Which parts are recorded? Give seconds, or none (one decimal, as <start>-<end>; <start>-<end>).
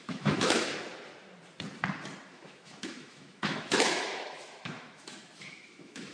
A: 0.8-2.3